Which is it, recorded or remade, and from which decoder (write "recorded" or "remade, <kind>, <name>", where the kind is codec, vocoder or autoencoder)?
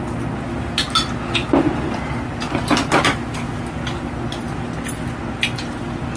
recorded